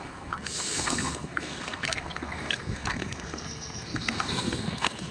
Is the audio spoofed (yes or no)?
yes